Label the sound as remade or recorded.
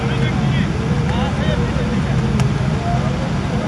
recorded